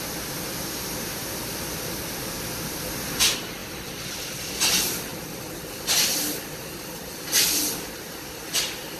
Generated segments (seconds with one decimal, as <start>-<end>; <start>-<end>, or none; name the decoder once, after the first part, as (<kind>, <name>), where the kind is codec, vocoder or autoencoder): 3.6-4.5 (vocoder, BigVGAN v2)

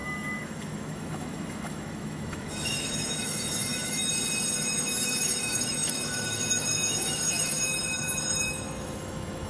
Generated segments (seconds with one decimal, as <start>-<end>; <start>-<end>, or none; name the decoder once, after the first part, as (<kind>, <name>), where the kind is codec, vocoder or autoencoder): 0.0-4.1 (autoencoder, DAC-VAE); 4.6-9.5

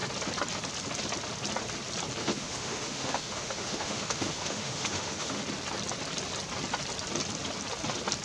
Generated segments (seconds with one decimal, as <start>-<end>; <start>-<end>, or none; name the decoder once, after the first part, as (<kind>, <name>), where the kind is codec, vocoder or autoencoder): 2.2-5.4 (autoencoder, DAC-VAE)

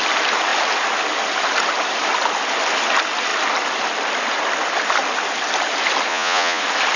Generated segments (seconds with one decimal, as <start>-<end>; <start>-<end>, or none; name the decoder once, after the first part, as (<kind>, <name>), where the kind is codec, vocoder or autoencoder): 6.1-6.6 (vocoder, Vocos)

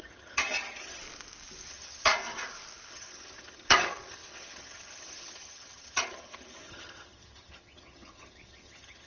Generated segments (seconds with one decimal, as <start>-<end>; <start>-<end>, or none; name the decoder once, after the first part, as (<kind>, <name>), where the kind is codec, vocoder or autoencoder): 0.0-1.0 (vocoder, HiFi-GAN); 1.7-2.1; 2.9-9.1

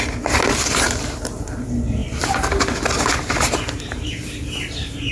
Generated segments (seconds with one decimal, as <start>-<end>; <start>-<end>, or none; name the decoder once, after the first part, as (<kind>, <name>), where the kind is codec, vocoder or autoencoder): 2.0-2.6 (vocoder, BigVGAN v2)

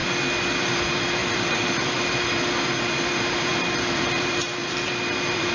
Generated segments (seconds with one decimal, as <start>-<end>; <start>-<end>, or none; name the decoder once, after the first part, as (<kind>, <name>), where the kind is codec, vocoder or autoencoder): 0.6-5.5 (vocoder, BigVGAN v2)